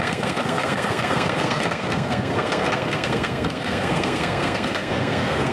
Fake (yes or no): yes